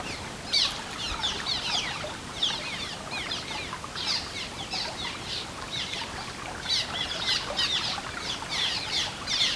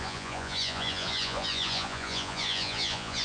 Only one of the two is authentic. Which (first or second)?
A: first